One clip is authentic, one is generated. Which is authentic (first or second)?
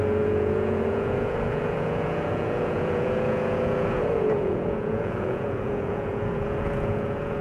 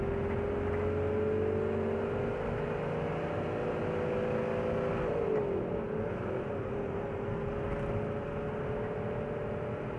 second